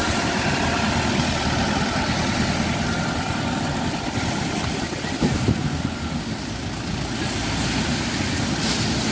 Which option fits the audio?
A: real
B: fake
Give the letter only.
A